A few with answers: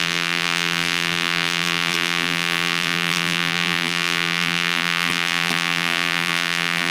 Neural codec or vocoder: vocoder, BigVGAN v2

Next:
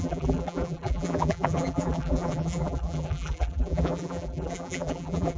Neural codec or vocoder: vocoder, BigVGAN v2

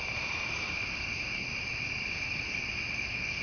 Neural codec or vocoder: vocoder, BigVGAN v2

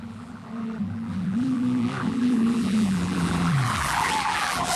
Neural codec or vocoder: vocoder, BigVGAN v2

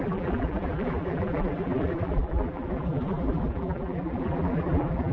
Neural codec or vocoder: vocoder, BigVGAN v2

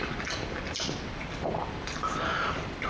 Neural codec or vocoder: vocoder, BigVGAN v2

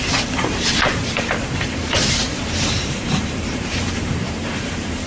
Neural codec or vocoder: vocoder, BigVGAN v2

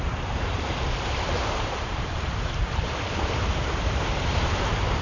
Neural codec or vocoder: vocoder, BigVGAN v2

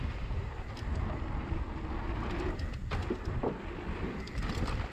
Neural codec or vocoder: none